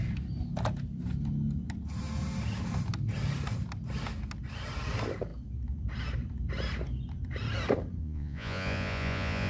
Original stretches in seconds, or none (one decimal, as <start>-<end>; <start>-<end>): 0.0-8.0